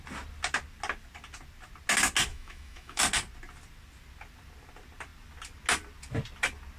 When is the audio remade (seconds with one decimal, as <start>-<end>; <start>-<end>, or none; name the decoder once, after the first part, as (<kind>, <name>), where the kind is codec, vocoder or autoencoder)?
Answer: 2.3-3.0 (autoencoder, DAC-VAE)